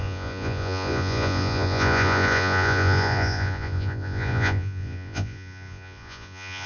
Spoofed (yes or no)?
yes